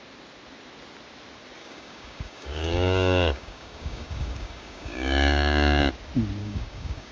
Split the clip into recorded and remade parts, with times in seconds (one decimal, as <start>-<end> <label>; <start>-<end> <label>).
0.0-1.6 recorded; 1.6-5.9 remade; 5.9-6.4 recorded; 6.4-7.1 remade